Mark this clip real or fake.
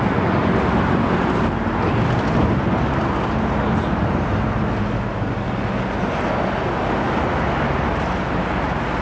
real